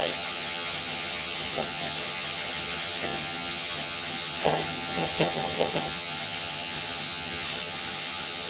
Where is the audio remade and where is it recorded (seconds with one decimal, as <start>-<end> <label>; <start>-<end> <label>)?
0.0-8.5 remade